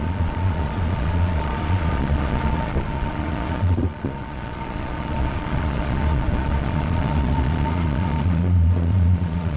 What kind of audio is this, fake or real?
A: fake